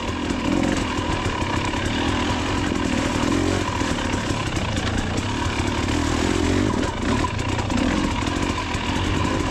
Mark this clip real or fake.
real